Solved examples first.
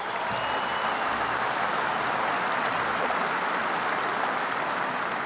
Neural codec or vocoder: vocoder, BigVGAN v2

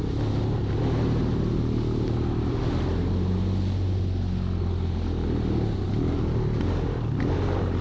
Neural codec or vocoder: none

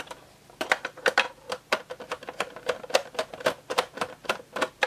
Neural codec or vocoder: vocoder, BigVGAN v2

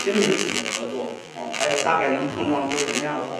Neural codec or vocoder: vocoder, BigVGAN v2